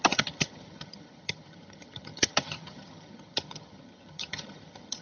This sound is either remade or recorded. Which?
remade